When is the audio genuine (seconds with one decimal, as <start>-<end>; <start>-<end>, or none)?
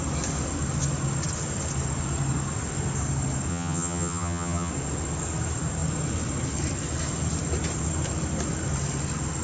0.0-3.5; 4.7-9.4